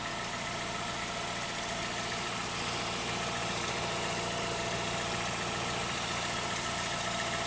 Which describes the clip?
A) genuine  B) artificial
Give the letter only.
A